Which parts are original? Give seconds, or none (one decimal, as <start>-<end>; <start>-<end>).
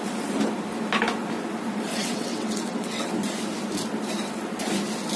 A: 0.0-1.9; 3.1-5.2